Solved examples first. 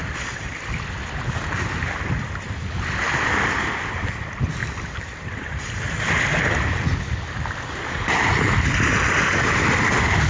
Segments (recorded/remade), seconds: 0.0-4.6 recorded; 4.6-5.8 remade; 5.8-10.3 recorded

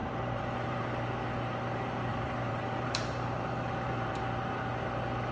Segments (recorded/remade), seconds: 0.0-0.9 remade; 0.9-2.1 recorded; 2.1-4.2 remade; 4.2-5.3 recorded

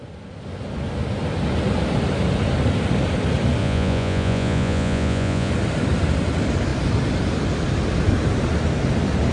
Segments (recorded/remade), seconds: 0.0-3.6 recorded; 3.6-5.5 remade; 5.5-9.3 recorded

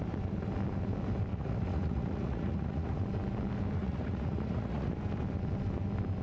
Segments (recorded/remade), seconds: 0.0-1.3 recorded; 1.3-3.0 remade; 3.0-3.8 recorded; 3.8-4.9 remade; 4.9-6.2 recorded

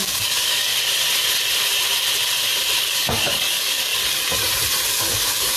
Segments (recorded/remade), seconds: 0.0-0.7 remade; 0.7-2.8 recorded; 2.8-3.9 remade; 3.9-4.9 recorded; 4.9-5.6 remade